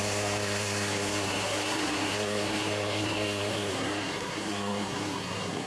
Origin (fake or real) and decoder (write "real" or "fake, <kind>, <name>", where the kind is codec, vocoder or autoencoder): fake, codec, SNAC